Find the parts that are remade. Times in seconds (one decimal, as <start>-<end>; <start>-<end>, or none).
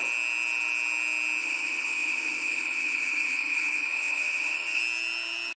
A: 1.4-4.8